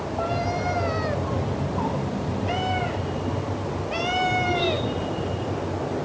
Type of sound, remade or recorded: recorded